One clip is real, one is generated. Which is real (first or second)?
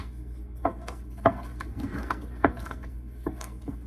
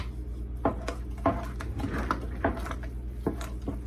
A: second